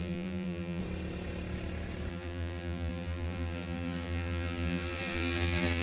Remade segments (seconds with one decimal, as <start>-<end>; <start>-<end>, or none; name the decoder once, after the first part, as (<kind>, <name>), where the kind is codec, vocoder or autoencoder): 0.0-0.8 (vocoder, BigVGAN v2); 2.1-5.8